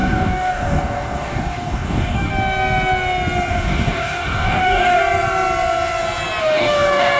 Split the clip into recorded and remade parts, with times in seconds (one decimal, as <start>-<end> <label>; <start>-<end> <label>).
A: 0.0-2.3 remade; 2.3-3.5 recorded; 3.5-5.0 remade; 5.0-6.4 recorded; 6.4-7.2 remade